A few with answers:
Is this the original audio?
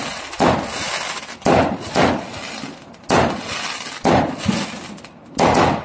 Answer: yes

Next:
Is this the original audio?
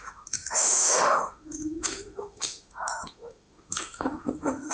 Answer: no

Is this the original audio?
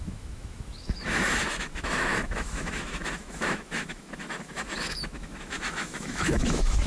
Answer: no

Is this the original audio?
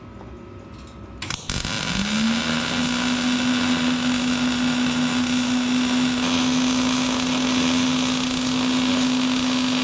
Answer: yes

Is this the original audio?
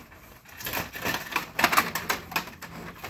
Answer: yes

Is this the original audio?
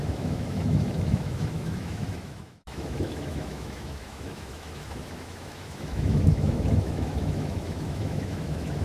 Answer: no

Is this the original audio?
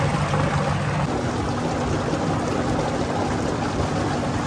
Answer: yes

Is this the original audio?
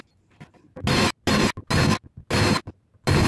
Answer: yes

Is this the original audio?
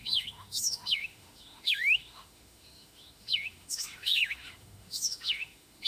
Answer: no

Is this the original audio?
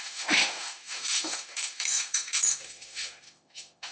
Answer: no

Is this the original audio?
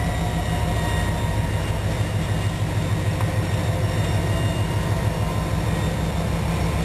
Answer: yes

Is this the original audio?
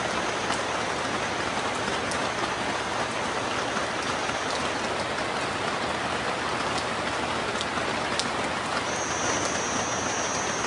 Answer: yes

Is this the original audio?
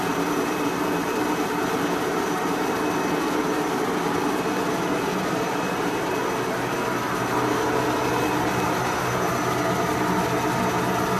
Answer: yes